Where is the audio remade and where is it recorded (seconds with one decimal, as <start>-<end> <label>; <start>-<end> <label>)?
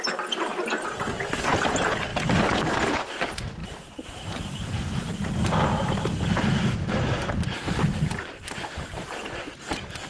0.0-0.5 recorded; 0.5-1.3 remade; 1.3-3.6 recorded; 3.6-8.3 remade; 8.3-8.9 recorded; 8.9-10.1 remade